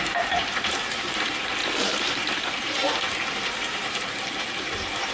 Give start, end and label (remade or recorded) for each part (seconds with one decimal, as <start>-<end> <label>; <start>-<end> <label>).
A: 0.0-5.1 remade